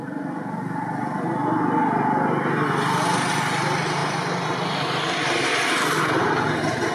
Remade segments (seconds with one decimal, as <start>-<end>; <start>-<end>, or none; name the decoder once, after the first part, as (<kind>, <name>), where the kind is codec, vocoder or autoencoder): none